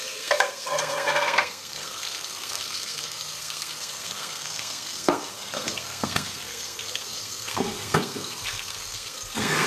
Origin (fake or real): fake